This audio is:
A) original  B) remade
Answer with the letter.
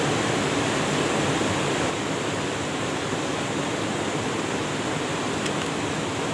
A